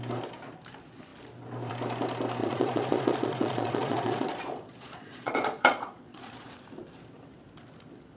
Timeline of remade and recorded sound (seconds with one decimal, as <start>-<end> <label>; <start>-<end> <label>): 0.0-2.4 recorded; 2.4-6.5 remade; 6.5-8.2 recorded